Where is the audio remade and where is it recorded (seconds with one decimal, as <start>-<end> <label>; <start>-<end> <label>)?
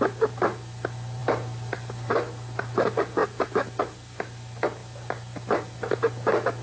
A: 0.0-6.6 recorded